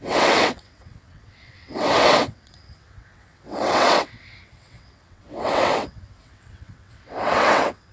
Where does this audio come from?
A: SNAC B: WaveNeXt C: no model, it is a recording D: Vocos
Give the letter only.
B